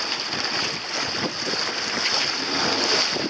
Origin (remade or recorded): recorded